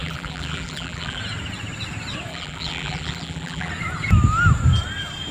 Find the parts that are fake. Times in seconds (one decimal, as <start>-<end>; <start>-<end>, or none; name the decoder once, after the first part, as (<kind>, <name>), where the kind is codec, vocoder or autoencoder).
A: 0.0-1.2 (vocoder, BigVGAN v2); 2.3-3.7